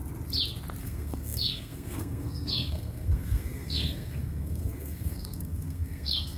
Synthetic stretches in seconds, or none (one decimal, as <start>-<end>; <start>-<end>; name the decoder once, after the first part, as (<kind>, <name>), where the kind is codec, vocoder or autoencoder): 0.8-6.4 (codec, SNAC)